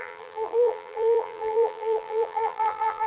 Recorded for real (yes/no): no